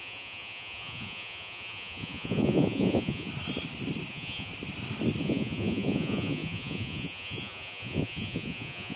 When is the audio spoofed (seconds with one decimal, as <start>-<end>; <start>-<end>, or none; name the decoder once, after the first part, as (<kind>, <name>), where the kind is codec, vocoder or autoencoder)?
0.0-3.3 (vocoder, Vocos); 4.1-4.5; 5.2-9.0